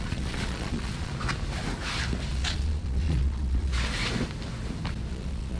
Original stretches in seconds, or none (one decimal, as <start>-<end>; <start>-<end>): 1.1-2.3; 3.7-5.1